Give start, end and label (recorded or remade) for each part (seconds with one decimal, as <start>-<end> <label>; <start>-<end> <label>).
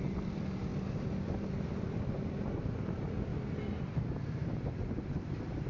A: 0.0-0.7 remade; 0.7-1.7 recorded; 1.7-3.3 remade; 3.3-3.8 recorded; 3.8-5.7 remade